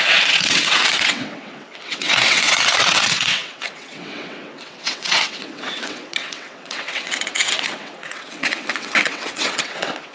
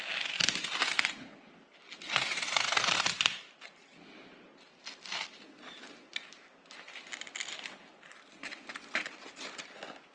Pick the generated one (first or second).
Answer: first